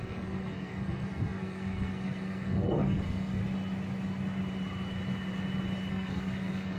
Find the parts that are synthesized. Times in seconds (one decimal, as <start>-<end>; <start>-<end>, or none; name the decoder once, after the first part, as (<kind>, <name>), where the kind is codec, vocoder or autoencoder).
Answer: 0.0-3.4 (codec, SNAC); 5.9-6.8